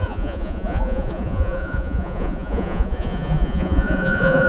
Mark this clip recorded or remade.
remade